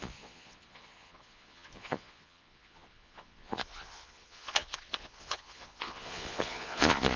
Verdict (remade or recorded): remade